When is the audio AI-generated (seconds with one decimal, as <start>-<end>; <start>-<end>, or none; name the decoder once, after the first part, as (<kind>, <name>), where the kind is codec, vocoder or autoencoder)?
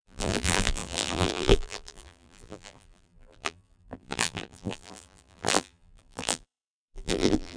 0.0-7.6 (vocoder, BigVGAN v2)